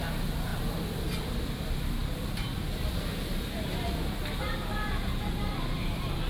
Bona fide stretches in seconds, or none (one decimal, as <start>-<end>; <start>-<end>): 0.0-6.3